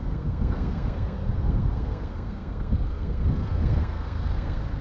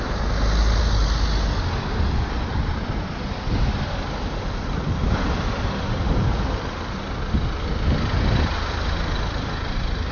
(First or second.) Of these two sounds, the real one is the second